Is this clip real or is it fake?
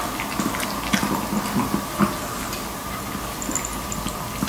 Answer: real